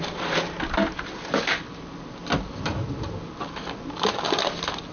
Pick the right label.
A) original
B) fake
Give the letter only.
A